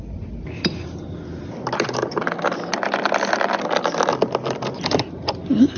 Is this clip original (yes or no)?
yes